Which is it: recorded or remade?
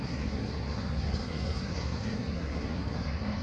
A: remade